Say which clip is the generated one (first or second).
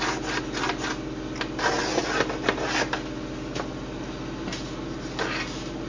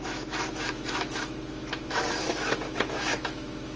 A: second